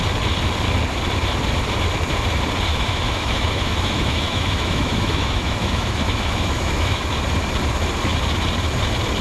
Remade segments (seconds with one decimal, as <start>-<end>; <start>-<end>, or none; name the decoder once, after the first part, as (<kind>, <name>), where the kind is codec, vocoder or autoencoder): 2.7-7.1 (autoencoder, DAC-VAE)